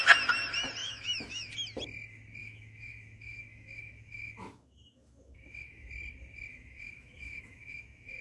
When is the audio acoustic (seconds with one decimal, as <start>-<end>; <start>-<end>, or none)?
0.0-0.8; 1.5-2.4; 5.9-6.5

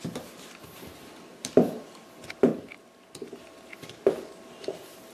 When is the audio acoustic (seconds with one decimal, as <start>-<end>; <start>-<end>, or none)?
0.0-1.3; 2.0-5.1

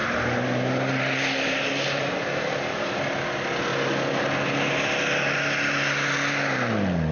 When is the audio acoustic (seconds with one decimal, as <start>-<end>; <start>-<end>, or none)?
2.7-7.1

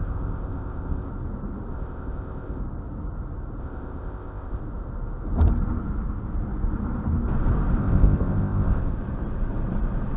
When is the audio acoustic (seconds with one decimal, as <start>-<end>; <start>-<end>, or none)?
1.1-1.7; 2.6-3.6; 4.6-7.8; 8.9-10.2

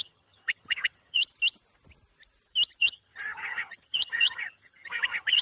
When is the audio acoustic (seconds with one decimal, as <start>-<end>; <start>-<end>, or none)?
1.2-2.8